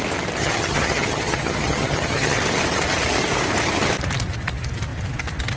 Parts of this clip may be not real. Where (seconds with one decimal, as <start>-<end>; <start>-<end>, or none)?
0.4-2.4